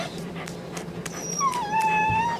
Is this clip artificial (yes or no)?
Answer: no